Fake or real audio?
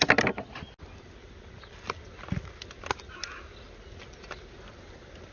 real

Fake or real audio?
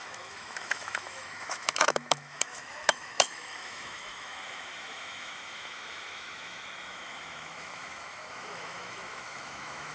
fake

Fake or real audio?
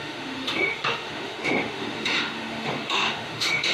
fake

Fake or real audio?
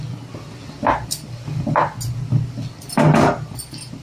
real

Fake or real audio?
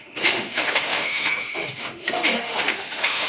fake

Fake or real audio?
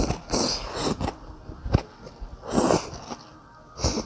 real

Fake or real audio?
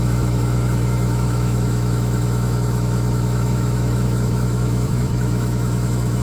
fake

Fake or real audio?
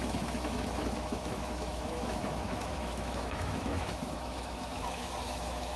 fake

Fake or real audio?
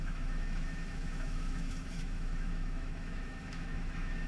fake